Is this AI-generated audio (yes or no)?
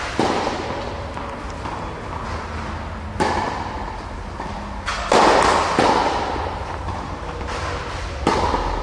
no